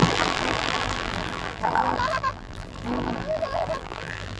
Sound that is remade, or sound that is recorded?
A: remade